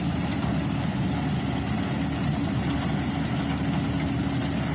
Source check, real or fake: real